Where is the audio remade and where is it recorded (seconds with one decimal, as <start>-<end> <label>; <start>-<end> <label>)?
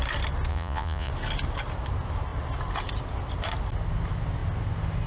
0.0-0.5 recorded; 0.5-1.1 remade; 1.1-5.1 recorded